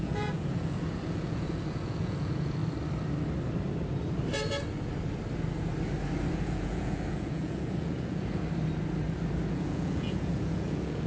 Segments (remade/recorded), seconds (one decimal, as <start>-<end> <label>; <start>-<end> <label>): 0.0-2.6 remade; 2.6-6.3 recorded; 6.3-8.4 remade; 8.4-9.5 recorded; 9.5-11.1 remade